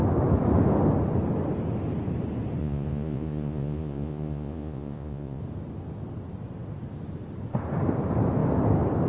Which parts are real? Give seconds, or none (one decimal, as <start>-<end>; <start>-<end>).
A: 0.0-2.6; 5.4-9.1